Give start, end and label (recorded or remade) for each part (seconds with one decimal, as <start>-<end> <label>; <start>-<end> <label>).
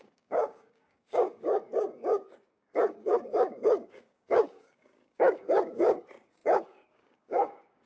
0.0-7.9 remade